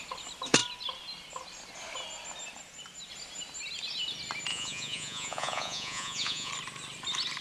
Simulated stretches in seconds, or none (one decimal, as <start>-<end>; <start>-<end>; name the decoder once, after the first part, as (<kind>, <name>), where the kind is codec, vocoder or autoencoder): 4.5-6.5 (vocoder, Vocos)